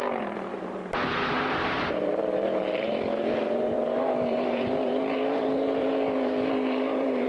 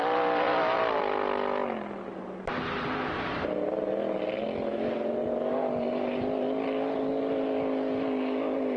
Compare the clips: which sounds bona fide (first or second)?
second